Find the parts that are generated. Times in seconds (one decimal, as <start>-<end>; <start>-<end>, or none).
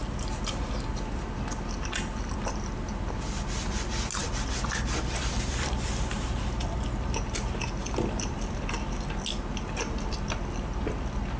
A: 4.2-6.4; 7.8-8.7